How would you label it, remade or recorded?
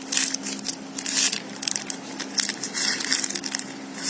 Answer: recorded